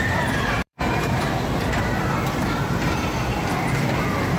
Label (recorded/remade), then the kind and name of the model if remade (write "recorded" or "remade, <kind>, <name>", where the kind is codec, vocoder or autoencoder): remade, vocoder, BigVGAN v2